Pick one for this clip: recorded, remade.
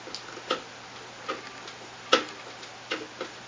recorded